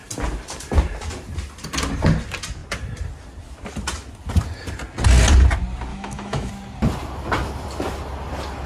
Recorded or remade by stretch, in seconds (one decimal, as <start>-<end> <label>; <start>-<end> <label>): 0.0-5.9 recorded; 5.9-6.5 remade; 6.5-8.7 recorded